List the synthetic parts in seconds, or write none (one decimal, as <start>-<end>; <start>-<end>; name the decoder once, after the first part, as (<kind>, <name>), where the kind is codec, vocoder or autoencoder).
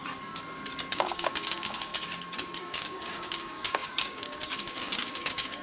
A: 0.9-1.9 (codec, DAC); 2.6-5.6